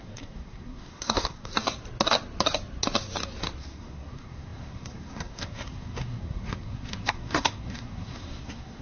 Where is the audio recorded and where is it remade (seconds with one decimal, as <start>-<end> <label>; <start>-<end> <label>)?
0.0-1.5 remade; 1.5-3.6 recorded; 3.6-8.8 remade